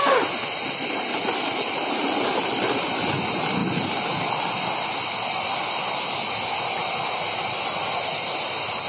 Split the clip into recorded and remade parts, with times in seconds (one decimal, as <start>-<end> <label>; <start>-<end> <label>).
0.0-8.9 recorded